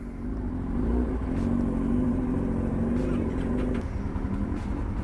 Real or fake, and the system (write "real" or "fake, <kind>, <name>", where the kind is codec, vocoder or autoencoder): real